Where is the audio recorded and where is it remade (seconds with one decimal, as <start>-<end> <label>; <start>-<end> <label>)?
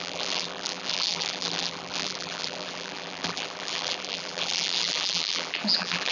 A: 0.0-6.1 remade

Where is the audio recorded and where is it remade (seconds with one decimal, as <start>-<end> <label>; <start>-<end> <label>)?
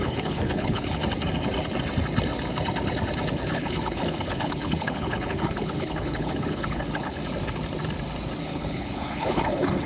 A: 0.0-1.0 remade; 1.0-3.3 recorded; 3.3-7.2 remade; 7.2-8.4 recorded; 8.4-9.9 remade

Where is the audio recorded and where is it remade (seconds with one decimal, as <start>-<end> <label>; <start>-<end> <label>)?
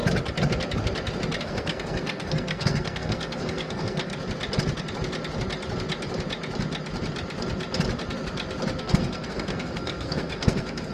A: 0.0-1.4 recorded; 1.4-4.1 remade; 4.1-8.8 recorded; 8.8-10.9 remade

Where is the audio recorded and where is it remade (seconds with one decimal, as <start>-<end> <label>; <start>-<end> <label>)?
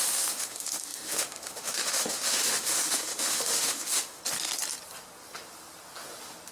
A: 0.0-4.2 remade; 4.2-6.5 recorded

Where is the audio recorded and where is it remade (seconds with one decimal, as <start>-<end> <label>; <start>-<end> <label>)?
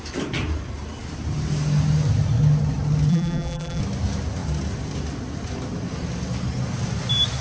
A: 0.0-3.1 recorded; 3.1-3.8 remade; 3.8-7.4 recorded